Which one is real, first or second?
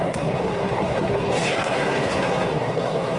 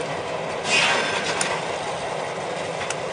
second